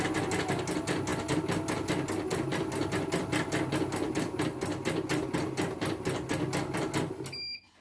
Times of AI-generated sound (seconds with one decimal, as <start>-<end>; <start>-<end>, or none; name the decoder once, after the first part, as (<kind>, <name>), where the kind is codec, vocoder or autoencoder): none